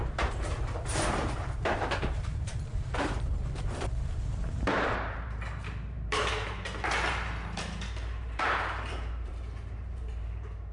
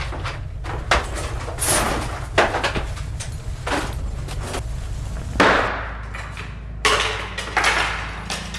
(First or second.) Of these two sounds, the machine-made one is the first